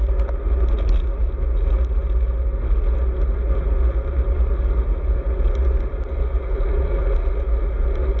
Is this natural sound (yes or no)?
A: yes